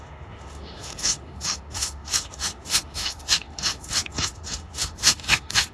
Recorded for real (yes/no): no